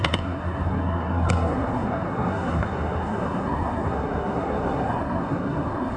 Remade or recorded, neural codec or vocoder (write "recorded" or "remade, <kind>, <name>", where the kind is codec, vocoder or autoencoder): remade, codec, SNAC